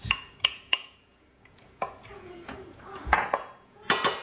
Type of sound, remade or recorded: remade